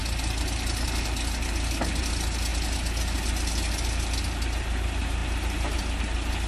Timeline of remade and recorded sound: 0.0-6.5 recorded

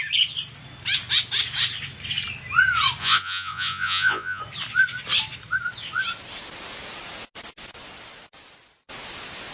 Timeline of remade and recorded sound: 0.0-3.0 recorded; 3.0-4.4 remade; 4.4-9.5 recorded

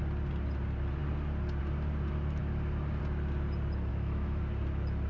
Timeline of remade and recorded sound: 0.0-3.9 recorded; 3.9-4.4 remade; 4.4-5.1 recorded

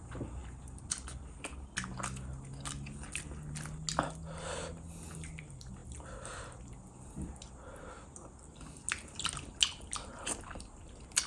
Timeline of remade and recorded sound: 0.0-11.3 recorded

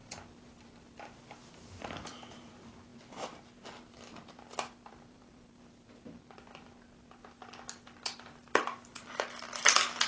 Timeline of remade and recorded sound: 0.0-2.9 remade; 2.9-3.9 recorded; 3.9-10.1 remade

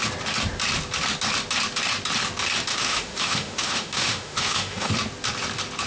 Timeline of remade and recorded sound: 0.0-2.7 recorded; 2.7-4.9 remade; 4.9-5.9 recorded

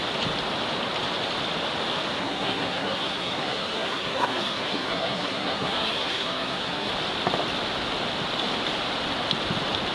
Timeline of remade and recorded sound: 0.0-2.2 recorded; 2.2-6.9 remade; 6.9-9.9 recorded